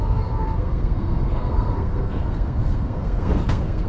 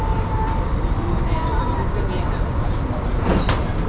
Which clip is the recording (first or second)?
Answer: second